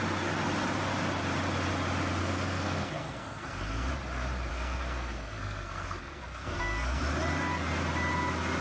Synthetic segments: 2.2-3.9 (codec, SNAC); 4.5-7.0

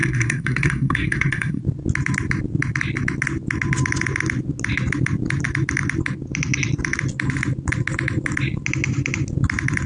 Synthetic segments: 0.0-1.6 (codec, SNAC)